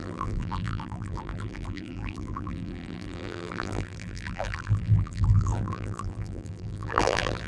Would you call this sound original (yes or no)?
no